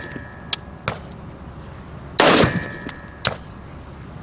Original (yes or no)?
yes